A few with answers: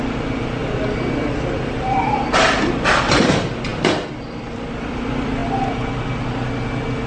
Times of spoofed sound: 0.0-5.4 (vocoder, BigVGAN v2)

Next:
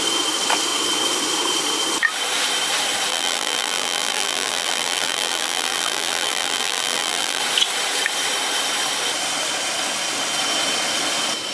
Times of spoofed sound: 3.1-7.4 (vocoder, BigVGAN v2)

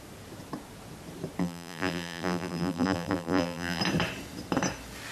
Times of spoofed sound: 1.4-3.8 (vocoder, BigVGAN v2)